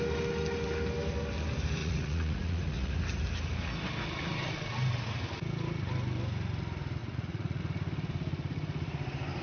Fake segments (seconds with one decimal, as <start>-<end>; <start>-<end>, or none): 1.8-3.0; 7.0-7.6